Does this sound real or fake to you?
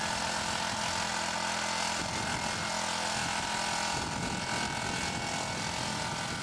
real